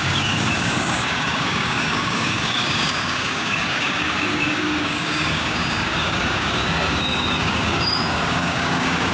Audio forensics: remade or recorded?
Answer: remade